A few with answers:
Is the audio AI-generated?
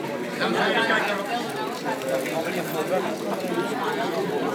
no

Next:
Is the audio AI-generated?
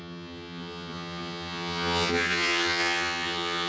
yes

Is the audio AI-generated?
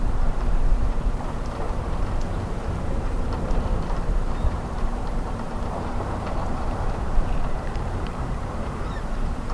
yes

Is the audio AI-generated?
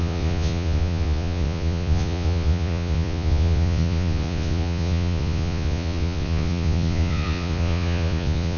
yes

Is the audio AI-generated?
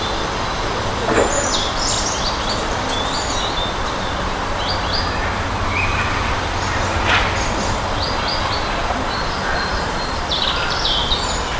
no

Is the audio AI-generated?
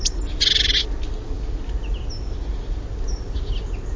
no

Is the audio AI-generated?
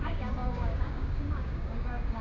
yes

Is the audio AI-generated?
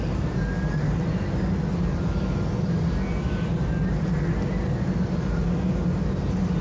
no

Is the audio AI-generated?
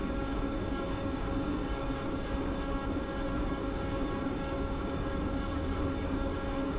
yes